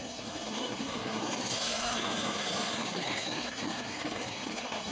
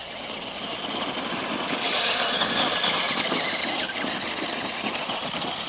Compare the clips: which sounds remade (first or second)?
first